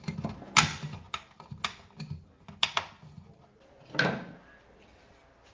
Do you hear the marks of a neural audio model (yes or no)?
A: no